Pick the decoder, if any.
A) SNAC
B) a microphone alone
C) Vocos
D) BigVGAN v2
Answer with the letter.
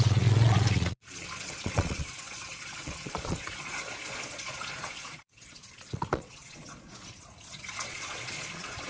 C